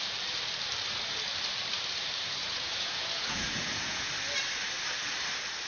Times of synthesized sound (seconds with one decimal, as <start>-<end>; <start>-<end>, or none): 2.4-4.1